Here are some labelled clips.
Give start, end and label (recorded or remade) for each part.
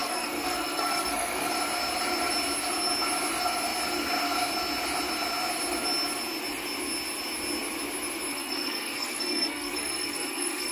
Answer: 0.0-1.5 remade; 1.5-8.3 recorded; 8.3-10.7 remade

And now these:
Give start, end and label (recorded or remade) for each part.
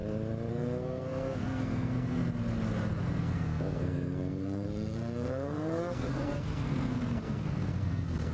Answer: 0.0-0.5 recorded; 0.5-2.2 remade; 2.2-3.2 recorded; 3.2-8.3 remade